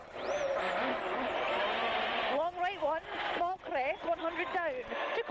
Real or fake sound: real